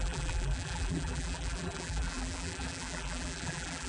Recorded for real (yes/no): no